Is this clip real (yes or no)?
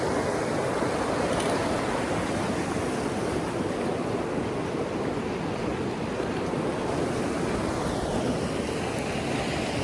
yes